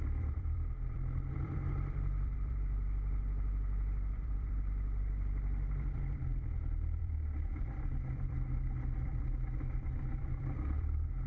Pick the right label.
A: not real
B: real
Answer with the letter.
A